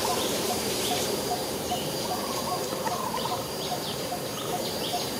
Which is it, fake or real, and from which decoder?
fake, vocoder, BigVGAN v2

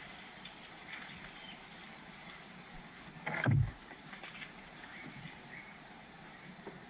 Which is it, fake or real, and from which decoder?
fake, vocoder, BigVGAN v2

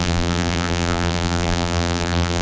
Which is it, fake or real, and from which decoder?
fake, vocoder, BigVGAN v2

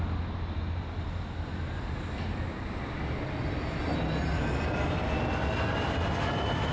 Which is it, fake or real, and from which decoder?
real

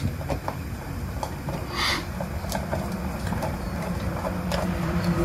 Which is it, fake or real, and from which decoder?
fake, vocoder, BigVGAN v2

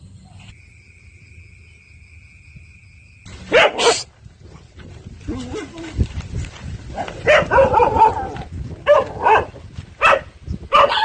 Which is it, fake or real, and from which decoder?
real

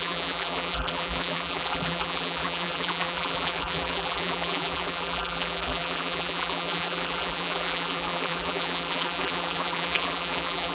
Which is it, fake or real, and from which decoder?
fake, vocoder, BigVGAN v2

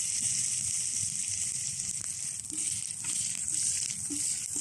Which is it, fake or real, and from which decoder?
fake, vocoder, BigVGAN v2